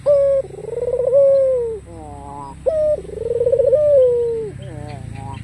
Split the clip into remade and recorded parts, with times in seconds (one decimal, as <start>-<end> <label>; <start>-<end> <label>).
0.0-5.4 recorded